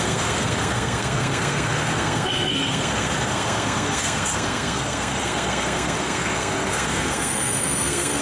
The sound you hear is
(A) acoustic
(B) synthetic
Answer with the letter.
B